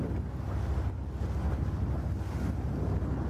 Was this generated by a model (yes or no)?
no